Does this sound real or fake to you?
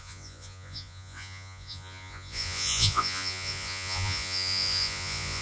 fake